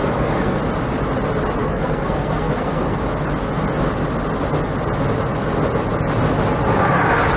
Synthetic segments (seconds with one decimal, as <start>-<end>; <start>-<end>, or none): 0.0-0.6; 1.6-3.0

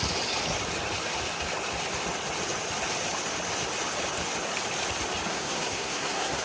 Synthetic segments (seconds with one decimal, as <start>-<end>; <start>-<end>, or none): 5.3-6.4

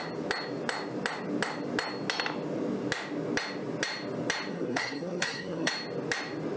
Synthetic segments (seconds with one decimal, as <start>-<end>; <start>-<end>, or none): 4.5-5.7